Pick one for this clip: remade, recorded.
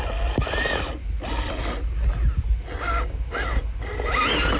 recorded